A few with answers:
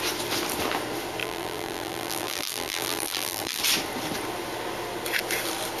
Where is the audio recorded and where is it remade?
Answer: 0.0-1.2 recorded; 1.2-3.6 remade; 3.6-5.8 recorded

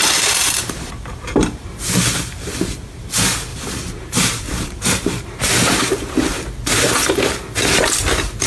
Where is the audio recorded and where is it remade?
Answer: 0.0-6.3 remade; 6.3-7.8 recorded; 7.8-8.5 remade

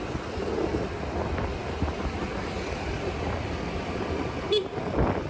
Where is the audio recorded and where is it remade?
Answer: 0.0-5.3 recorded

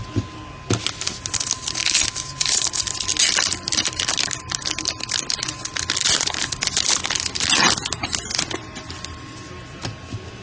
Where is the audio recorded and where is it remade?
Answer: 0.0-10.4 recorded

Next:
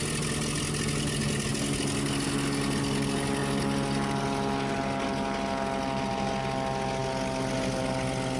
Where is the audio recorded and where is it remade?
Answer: 0.0-8.4 recorded